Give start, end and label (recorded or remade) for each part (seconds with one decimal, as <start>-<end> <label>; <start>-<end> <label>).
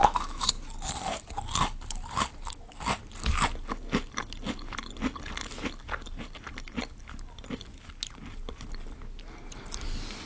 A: 0.0-0.5 remade; 0.5-10.3 recorded